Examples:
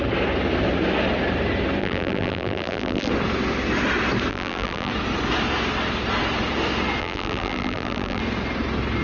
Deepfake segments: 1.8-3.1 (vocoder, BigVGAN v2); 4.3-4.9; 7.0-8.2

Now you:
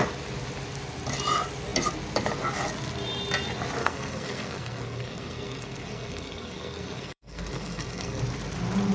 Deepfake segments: 3.8-8.2 (codec, SNAC)

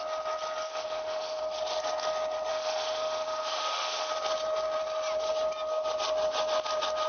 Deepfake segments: 0.7-1.4 (autoencoder, DAC-VAE); 2.5-4.1

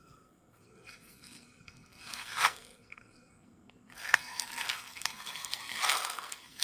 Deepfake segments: 0.0-6.6 (codec, SNAC)

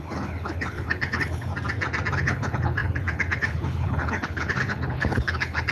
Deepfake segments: 0.0-1.5 (codec, HILCodec); 2.1-5.7

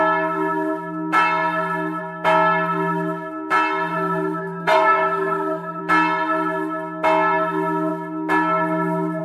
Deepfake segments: 3.9-5.8 (codec, SNAC)